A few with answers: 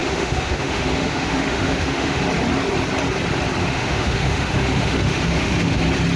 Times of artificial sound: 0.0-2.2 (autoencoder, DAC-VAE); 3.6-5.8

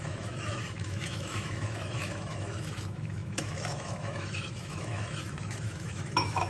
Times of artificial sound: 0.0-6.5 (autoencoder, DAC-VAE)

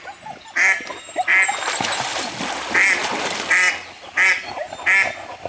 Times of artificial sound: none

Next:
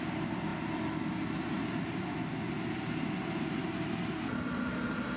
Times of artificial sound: none

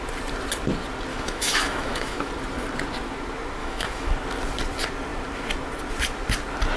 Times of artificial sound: 1.1-2.3 (autoencoder, DAC-VAE); 3.6-4.1

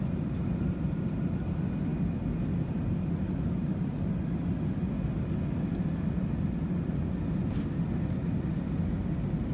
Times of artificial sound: none